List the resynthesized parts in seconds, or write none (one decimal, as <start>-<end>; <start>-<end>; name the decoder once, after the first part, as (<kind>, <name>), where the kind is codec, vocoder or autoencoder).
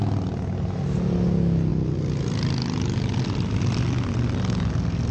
none